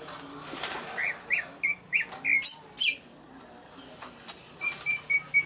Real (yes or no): yes